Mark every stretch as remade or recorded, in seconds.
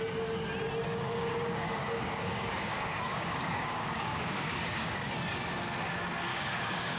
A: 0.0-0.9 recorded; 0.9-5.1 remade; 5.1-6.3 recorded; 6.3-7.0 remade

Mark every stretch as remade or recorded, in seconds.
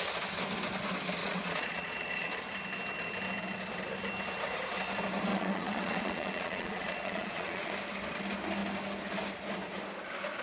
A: 0.0-1.2 recorded; 1.2-2.4 remade; 2.4-5.3 recorded; 5.3-7.7 remade; 7.7-10.4 recorded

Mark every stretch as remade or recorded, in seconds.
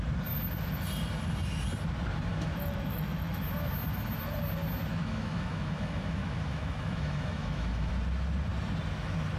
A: 0.0-2.3 recorded; 2.3-3.4 remade; 3.4-4.9 recorded; 4.9-7.9 remade; 7.9-9.4 recorded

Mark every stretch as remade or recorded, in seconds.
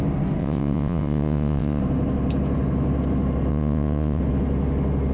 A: 0.0-0.4 recorded; 0.4-1.8 remade; 1.8-3.5 recorded; 3.5-4.2 remade; 4.2-5.1 recorded